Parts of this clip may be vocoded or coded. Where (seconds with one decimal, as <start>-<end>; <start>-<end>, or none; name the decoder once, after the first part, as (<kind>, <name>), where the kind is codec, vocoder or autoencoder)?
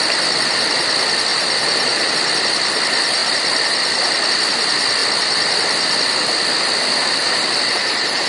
1.3-2.1 (vocoder, BigVGAN v2)